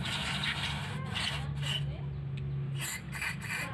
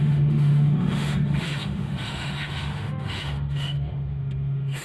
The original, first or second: first